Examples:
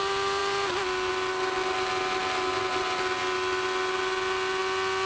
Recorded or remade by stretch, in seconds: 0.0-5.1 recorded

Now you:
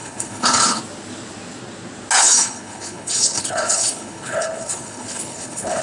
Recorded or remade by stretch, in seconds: 0.0-0.8 remade; 0.8-2.2 recorded; 2.2-5.8 remade